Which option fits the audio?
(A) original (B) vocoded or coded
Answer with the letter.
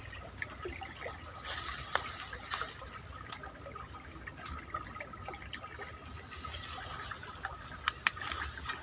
A